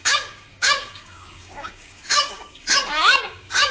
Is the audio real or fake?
fake